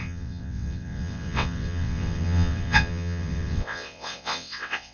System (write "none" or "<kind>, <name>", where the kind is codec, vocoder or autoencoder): vocoder, WaveNeXt